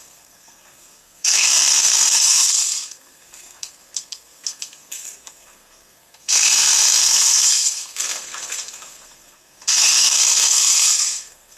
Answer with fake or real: fake